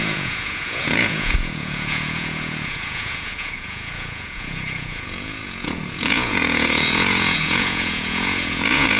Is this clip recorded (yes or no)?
no